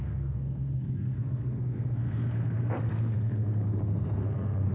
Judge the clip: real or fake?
fake